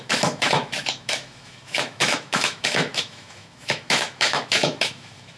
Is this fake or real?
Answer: fake